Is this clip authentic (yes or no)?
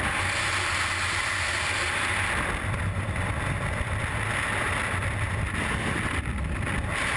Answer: yes